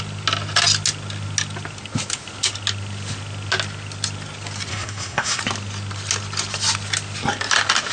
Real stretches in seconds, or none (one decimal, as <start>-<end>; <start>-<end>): 0.0-4.7; 5.4-7.9

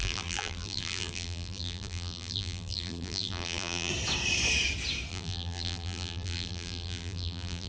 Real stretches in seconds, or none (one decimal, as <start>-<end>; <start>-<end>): 3.9-5.1

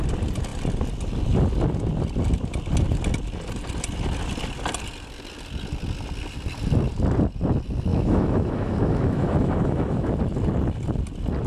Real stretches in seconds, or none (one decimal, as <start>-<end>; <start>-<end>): 0.0-7.9; 10.1-11.5

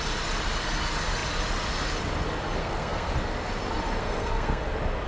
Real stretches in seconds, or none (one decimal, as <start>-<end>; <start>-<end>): 0.0-2.6; 3.1-4.0; 4.6-5.1